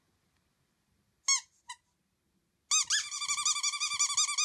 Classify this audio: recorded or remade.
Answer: recorded